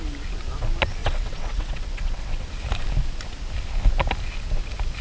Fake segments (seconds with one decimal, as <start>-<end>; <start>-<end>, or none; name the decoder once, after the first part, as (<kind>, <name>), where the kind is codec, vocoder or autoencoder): 1.0-2.5 (vocoder, WaveNeXt)